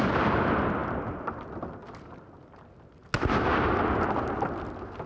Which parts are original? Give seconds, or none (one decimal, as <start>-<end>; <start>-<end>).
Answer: 0.0-5.1